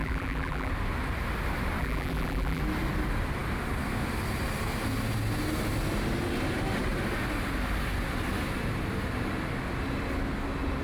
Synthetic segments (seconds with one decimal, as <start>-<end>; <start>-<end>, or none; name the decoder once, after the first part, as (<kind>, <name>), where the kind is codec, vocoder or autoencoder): 0.0-0.7 (vocoder, BigVGAN v2); 1.8-2.6